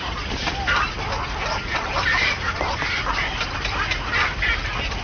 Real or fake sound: real